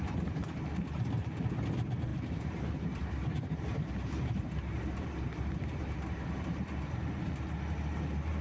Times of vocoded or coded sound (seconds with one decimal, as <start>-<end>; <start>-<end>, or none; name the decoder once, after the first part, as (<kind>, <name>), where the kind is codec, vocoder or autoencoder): 2.1-7.0 (vocoder, BigVGAN v2)